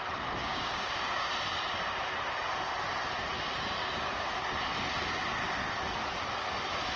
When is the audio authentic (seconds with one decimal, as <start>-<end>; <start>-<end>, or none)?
0.0-0.4; 1.3-7.0